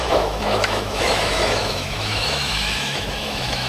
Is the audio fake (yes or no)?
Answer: yes